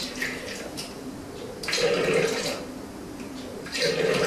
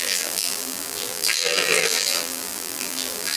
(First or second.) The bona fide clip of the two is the first